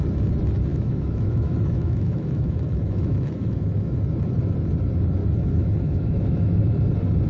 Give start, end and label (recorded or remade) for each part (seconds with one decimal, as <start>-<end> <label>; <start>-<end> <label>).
0.0-0.7 recorded; 0.7-4.0 remade; 4.0-5.2 recorded; 5.2-6.6 remade; 6.6-7.3 recorded